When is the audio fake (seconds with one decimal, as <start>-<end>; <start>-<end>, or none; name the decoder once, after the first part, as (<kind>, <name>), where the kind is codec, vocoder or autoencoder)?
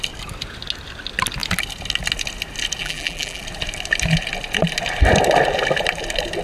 2.8-3.4 (vocoder, BigVGAN v2)